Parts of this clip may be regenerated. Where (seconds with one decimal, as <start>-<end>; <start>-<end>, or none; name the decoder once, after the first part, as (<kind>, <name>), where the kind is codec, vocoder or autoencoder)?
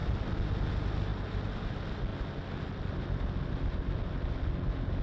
none